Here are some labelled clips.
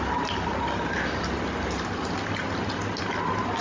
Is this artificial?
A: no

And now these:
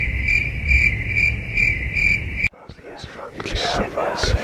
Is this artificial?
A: no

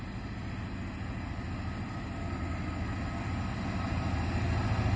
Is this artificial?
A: no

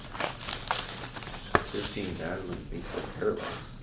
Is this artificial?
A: no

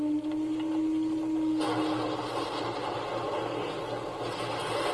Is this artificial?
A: no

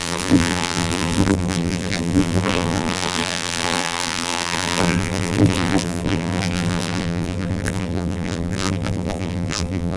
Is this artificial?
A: yes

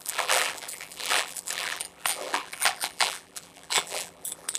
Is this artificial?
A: yes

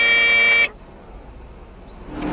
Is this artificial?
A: no